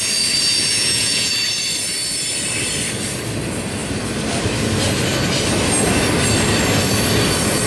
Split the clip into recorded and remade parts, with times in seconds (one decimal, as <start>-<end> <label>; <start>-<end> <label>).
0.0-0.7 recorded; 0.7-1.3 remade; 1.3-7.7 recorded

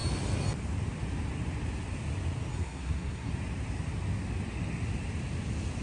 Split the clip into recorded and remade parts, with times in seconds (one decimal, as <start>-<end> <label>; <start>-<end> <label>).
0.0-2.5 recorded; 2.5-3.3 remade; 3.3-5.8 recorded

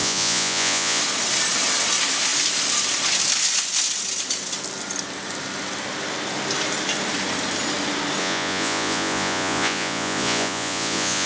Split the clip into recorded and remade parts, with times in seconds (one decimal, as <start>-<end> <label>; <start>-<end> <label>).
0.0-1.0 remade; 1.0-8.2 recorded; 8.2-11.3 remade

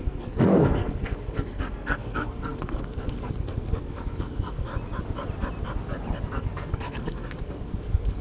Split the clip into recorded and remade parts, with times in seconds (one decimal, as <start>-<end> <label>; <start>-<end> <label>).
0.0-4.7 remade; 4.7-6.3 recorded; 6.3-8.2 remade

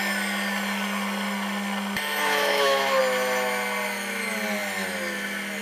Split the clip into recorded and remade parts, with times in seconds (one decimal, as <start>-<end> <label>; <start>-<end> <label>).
0.0-2.2 recorded; 2.2-3.0 remade; 3.0-5.6 recorded

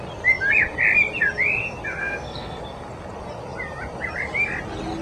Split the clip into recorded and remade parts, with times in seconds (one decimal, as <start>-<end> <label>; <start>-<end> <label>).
0.0-2.0 recorded; 2.0-2.6 remade; 2.6-5.0 recorded